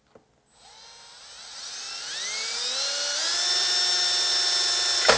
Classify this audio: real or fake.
real